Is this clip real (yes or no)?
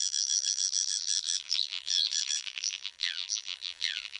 no